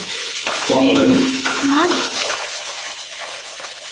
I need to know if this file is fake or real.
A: fake